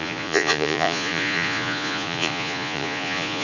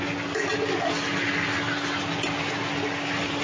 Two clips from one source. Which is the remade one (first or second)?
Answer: first